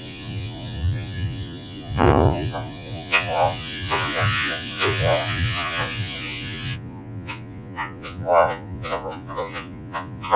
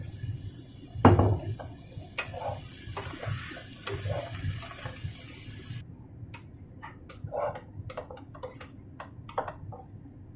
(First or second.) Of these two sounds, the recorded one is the second